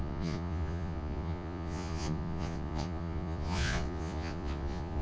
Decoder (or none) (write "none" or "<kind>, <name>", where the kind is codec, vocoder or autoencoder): vocoder, Vocos